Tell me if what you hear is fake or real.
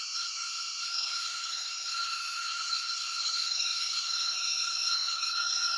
fake